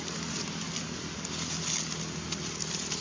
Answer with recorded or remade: recorded